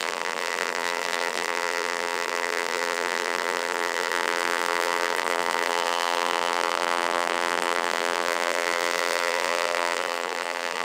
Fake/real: fake